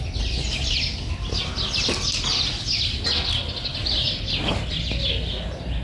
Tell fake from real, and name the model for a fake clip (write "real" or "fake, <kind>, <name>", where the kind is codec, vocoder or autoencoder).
real